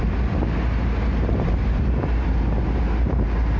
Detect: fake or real real